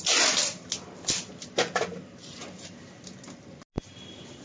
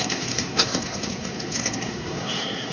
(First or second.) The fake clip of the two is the second